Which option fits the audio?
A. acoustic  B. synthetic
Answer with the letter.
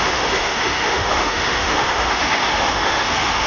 B